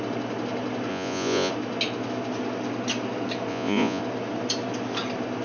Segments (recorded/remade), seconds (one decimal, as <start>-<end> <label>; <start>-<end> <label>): 0.0-0.9 recorded; 0.9-1.5 remade; 1.5-3.5 recorded; 3.5-4.0 remade; 4.0-5.4 recorded